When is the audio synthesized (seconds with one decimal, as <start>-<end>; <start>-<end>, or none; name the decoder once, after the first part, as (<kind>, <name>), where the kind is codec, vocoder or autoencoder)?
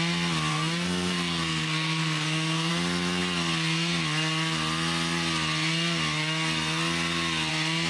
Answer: 0.5-2.7 (codec, SNAC)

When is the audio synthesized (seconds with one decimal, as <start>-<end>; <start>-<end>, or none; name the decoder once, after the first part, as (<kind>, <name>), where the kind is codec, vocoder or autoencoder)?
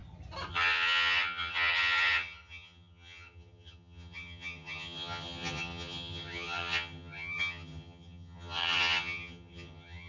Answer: 0.5-10.1 (vocoder, HiFi-GAN)